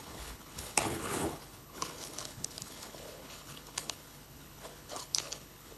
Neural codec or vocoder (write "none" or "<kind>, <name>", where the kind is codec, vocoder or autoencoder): codec, HILCodec